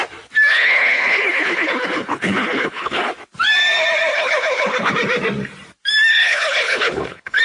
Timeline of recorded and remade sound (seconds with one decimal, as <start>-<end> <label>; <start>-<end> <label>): 0.0-0.5 recorded; 0.5-3.1 remade; 3.1-4.1 recorded; 4.1-4.9 remade; 4.9-6.1 recorded; 6.1-7.4 remade